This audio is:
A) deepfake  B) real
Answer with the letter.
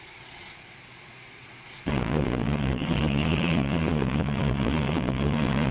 A